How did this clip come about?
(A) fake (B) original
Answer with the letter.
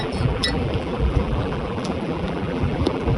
A